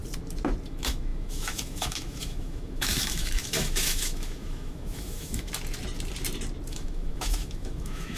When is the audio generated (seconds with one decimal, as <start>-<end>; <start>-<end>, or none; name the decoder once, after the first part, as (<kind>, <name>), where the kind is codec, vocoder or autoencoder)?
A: 0.7-5.5 (autoencoder, DAC-VAE); 6.7-8.2